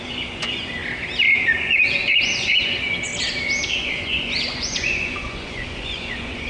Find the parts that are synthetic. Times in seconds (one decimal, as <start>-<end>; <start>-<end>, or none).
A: 0.0-0.8; 1.4-3.1; 3.7-6.5